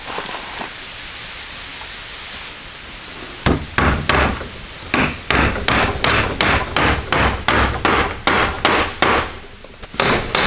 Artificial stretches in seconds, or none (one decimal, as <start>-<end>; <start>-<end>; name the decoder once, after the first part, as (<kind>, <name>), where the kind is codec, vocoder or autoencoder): none